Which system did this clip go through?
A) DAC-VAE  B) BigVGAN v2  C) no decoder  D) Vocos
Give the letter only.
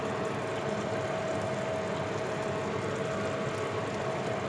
C